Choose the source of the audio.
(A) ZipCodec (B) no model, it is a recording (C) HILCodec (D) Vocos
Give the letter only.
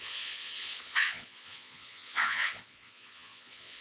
D